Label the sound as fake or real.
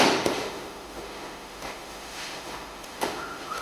fake